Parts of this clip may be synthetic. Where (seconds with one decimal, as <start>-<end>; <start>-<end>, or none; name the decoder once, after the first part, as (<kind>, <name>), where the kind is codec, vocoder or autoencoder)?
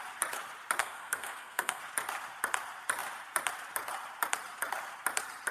0.8-1.8 (codec, SNAC)